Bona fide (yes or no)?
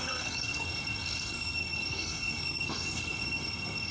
no